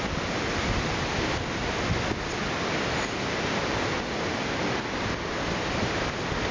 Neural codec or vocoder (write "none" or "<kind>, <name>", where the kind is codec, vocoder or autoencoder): none